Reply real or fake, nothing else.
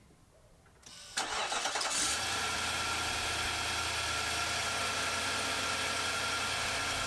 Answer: real